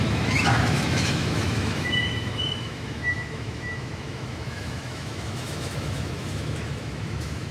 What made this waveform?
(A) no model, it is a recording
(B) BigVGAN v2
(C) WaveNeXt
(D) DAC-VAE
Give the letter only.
D